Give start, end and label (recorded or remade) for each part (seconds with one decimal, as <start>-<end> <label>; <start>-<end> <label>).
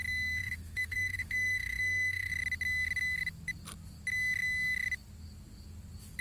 0.0-0.4 recorded; 0.4-2.3 remade; 2.3-6.2 recorded